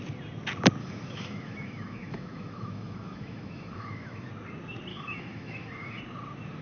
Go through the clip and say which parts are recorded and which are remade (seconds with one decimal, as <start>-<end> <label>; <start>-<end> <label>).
0.0-0.8 recorded; 0.8-4.3 remade; 4.3-4.9 recorded; 4.9-6.0 remade; 6.0-6.6 recorded